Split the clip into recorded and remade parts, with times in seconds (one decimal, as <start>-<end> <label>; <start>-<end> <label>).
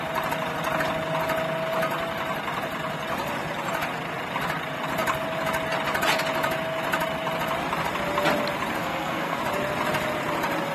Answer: 0.0-8.8 recorded; 8.8-9.4 remade; 9.4-10.7 recorded